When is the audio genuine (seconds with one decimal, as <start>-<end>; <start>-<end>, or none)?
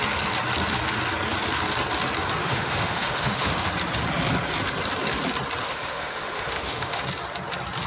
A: 0.0-2.4; 3.7-5.6; 7.0-7.9